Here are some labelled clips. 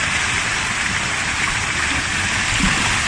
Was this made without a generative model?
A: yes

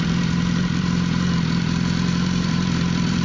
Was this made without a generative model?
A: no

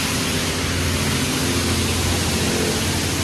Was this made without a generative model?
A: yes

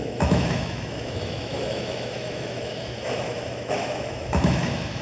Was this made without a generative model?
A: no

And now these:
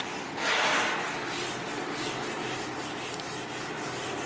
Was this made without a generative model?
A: no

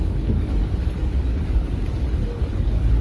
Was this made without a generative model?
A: no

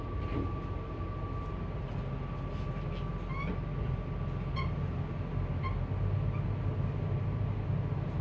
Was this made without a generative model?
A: yes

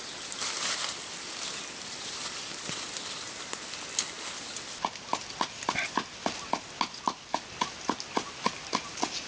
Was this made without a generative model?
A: yes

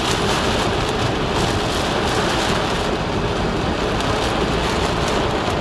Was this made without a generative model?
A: yes